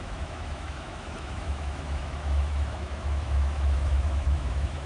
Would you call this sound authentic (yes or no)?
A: no